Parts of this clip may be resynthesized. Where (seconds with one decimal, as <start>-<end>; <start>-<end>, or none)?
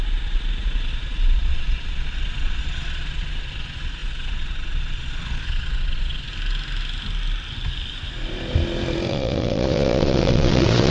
0.0-6.3; 9.1-10.9